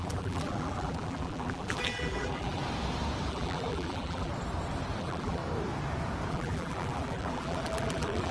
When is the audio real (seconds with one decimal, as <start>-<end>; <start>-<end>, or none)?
2.6-3.3; 4.3-5.0; 5.4-6.3